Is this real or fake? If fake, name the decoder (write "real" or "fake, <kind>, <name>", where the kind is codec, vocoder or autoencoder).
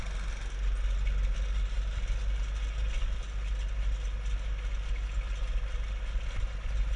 real